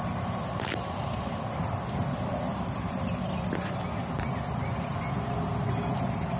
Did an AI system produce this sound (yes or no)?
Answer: no